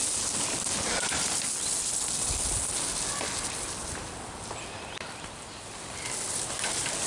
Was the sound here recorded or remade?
recorded